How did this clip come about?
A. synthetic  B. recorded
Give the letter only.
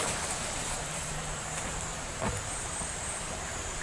A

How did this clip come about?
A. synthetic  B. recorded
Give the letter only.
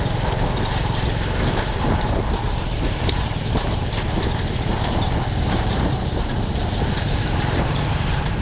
A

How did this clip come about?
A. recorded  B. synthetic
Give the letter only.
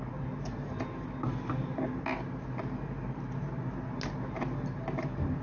A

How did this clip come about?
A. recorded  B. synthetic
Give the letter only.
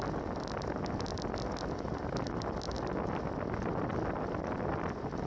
A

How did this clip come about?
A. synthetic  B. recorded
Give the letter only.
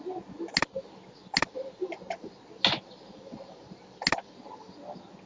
B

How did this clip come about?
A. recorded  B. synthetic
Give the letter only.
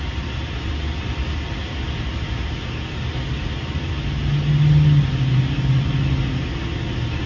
A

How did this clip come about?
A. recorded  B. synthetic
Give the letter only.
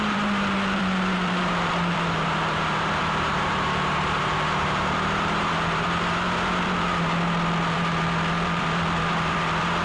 B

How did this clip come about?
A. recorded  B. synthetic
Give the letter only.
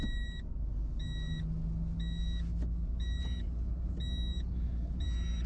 A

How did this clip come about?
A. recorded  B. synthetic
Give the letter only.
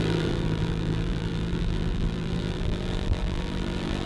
B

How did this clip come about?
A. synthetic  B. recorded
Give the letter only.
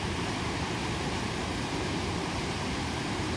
A